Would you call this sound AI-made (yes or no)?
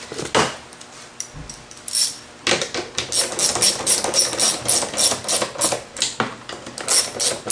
no